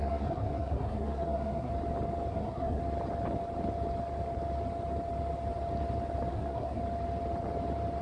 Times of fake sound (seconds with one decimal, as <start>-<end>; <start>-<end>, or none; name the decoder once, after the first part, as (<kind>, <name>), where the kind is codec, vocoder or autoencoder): 0.0-1.7 (codec, SNAC); 2.3-2.8; 6.3-6.8

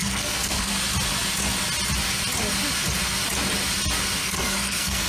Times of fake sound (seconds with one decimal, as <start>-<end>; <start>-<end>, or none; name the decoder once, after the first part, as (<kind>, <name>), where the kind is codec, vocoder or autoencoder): 0.0-0.7 (codec, SNAC); 4.2-5.1